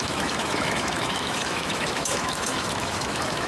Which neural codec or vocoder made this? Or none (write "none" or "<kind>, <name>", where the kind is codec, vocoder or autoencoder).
autoencoder, DAC-VAE